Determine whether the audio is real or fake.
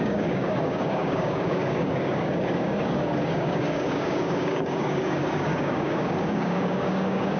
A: fake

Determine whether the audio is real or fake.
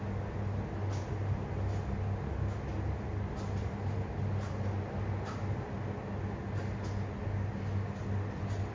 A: real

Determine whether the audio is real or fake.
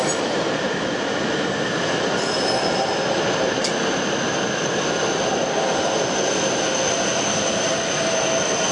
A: real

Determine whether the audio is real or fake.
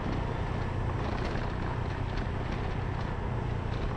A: real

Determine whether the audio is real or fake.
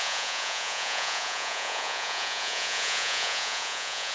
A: fake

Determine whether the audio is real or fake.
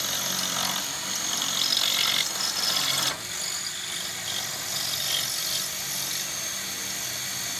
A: real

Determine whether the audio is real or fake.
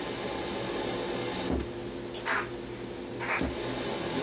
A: real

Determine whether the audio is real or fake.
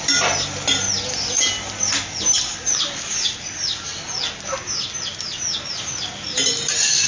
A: real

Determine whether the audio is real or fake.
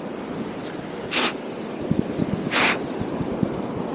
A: real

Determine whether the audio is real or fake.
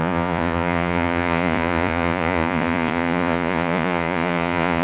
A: fake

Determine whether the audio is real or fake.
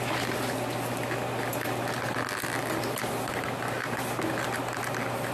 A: real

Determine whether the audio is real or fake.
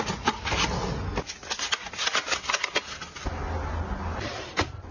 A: real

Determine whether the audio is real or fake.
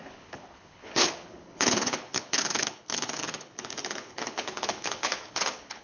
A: fake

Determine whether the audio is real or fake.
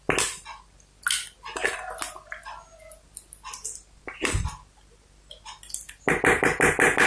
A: real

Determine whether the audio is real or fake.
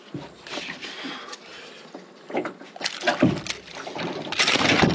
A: real